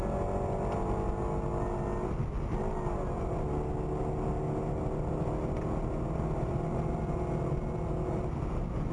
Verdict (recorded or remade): recorded